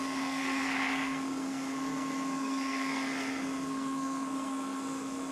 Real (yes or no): no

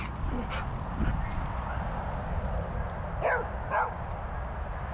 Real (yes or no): yes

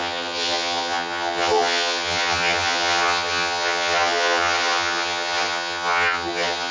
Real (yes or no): no